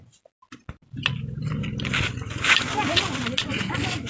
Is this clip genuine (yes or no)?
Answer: yes